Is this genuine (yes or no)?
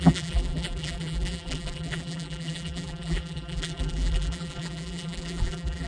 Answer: no